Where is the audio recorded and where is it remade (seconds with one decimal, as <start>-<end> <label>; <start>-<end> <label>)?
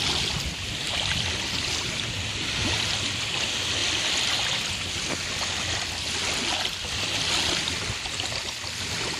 0.0-9.2 recorded